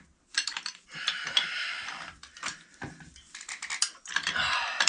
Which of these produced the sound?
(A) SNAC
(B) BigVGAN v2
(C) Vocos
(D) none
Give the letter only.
B